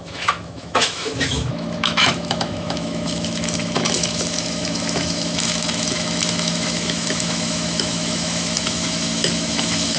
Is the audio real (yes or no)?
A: no